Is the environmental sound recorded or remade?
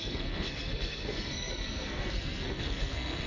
remade